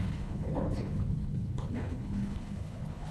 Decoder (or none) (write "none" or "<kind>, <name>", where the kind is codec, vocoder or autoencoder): codec, HILCodec